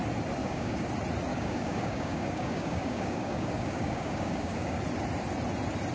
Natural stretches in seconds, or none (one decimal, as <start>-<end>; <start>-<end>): 0.0-0.4; 0.9-1.3; 4.8-5.9